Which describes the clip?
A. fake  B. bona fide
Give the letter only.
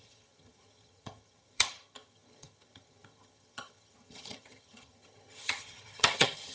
A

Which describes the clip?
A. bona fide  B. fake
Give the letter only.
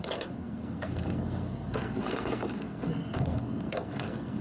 B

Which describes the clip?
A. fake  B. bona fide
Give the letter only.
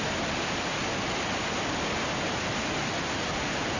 B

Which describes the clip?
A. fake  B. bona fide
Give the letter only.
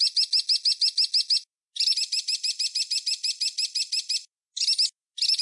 B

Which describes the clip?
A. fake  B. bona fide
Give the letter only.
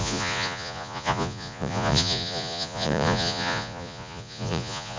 A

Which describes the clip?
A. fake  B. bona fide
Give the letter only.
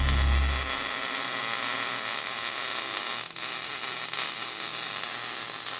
B